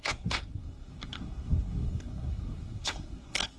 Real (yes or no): no